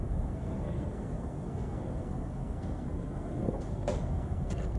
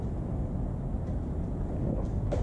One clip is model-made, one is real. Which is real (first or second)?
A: second